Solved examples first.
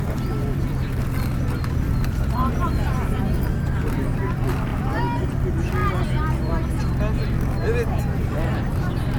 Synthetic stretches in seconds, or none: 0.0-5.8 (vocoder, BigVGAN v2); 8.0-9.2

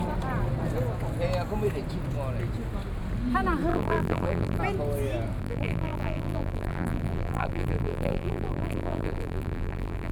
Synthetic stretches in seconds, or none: 3.7-4.6 (vocoder, BigVGAN v2); 5.4-10.1

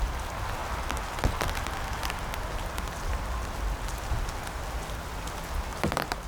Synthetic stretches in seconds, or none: 5.7-6.3 (vocoder, BigVGAN v2)